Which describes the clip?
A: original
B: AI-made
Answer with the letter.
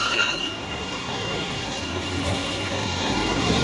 B